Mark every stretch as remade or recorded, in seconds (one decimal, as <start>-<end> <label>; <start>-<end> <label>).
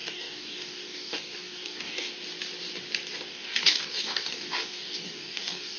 0.0-2.1 remade; 2.1-3.3 recorded; 3.3-5.8 remade